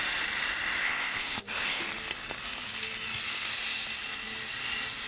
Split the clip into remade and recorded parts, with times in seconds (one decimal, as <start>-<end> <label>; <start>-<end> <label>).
0.0-0.8 recorded; 0.8-1.8 remade; 1.8-5.1 recorded